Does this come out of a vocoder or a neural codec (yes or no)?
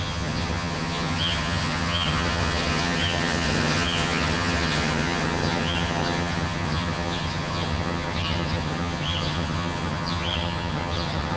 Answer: yes